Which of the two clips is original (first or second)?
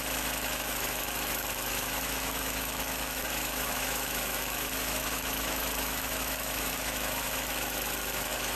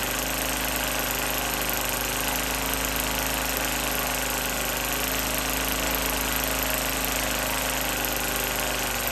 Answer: second